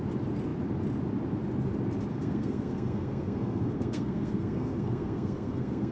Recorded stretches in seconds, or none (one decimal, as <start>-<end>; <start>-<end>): 0.0-2.1